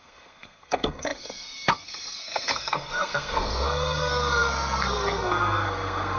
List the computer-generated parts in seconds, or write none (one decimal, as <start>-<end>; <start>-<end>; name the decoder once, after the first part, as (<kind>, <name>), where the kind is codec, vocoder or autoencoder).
0.0-6.2 (codec, SNAC)